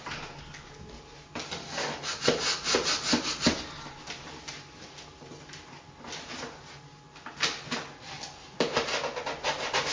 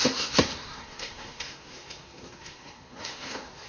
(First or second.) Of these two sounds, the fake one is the second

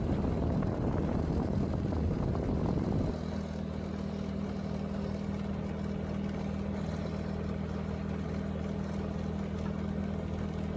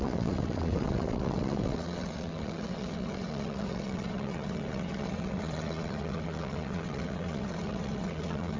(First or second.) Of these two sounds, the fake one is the second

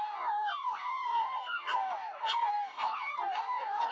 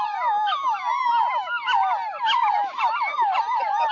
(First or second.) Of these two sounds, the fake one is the first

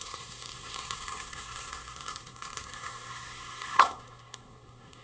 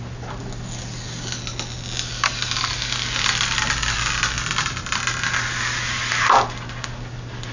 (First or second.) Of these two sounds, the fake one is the first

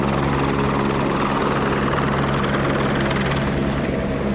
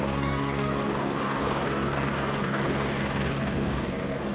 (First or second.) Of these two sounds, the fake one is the second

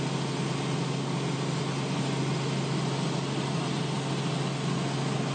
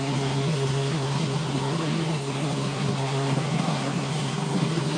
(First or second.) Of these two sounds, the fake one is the second